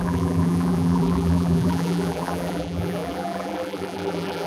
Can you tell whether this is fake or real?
fake